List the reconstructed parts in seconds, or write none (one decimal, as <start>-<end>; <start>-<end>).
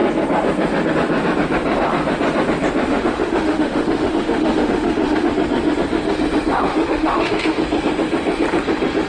2.9-5.3; 6.7-7.6